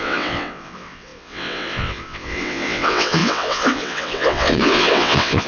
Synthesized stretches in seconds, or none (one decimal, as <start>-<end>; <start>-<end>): 0.0-5.5